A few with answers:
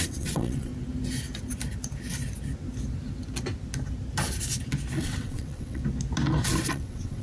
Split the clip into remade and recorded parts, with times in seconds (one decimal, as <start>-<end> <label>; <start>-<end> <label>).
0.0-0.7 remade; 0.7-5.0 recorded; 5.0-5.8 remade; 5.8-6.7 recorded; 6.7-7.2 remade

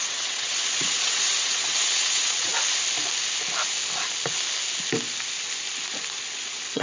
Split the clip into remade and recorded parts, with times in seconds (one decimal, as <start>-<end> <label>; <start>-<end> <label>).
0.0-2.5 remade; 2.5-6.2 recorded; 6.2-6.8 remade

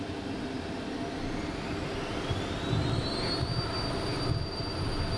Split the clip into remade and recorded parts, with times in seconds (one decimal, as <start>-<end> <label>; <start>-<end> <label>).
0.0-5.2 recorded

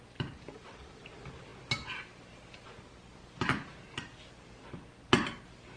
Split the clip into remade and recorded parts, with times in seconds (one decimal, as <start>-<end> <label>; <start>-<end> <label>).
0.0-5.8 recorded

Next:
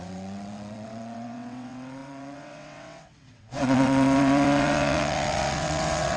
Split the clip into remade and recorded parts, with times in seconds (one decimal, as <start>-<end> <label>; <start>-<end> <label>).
0.0-6.2 remade

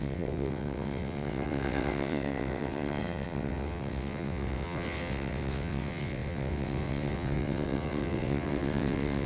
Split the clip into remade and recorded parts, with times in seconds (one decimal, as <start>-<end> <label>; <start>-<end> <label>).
0.0-9.3 remade

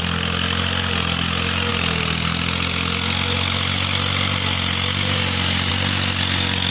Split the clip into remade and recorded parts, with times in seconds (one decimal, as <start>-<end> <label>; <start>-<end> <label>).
0.0-6.7 recorded

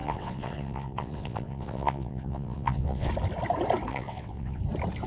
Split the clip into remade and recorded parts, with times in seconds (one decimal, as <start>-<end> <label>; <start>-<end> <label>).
0.0-3.1 remade; 3.1-3.9 recorded; 3.9-4.6 remade; 4.6-5.1 recorded